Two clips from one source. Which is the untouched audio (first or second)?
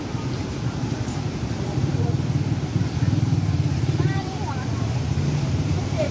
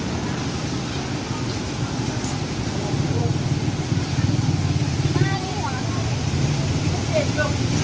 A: second